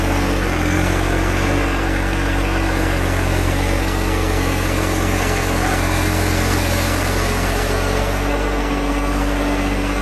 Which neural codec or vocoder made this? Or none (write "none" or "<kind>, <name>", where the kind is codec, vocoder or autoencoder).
codec, SNAC